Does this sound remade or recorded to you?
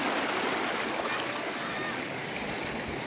recorded